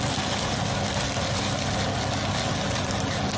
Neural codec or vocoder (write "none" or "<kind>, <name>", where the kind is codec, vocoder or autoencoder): none